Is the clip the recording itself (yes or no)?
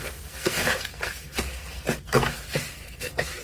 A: no